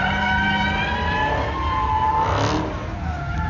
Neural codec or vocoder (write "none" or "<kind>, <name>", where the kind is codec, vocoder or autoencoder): none